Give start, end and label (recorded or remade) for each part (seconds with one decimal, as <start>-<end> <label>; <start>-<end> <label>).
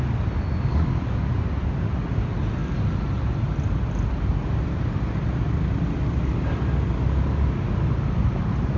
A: 0.0-0.7 recorded; 0.7-1.3 remade; 1.3-8.8 recorded